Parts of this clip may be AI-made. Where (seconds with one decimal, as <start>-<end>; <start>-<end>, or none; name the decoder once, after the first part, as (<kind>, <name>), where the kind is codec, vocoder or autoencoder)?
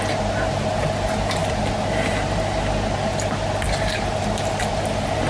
none